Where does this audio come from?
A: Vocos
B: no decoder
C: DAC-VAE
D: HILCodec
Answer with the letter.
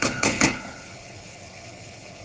D